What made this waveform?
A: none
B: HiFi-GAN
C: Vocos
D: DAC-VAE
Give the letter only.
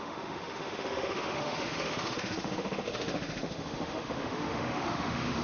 D